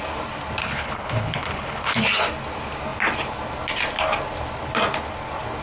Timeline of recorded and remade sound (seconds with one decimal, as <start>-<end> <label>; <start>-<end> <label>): 0.0-0.6 recorded; 0.6-2.0 remade; 2.0-5.6 recorded